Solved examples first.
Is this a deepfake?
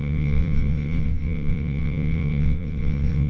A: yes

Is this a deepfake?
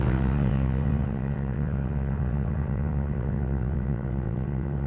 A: yes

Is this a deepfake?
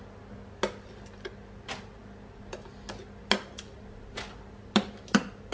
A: no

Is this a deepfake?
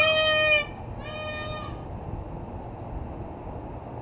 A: no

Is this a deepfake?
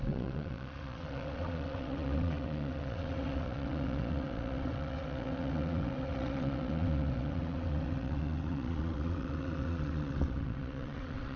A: yes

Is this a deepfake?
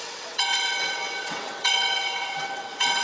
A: yes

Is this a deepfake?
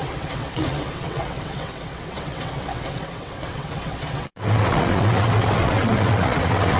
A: yes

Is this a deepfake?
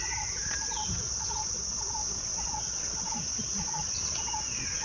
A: yes